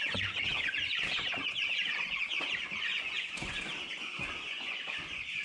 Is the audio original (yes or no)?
no